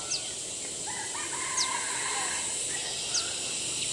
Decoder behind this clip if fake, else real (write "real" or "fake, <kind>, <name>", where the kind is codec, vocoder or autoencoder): real